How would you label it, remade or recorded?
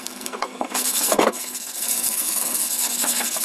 remade